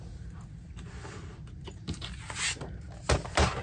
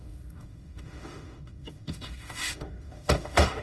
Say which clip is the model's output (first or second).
second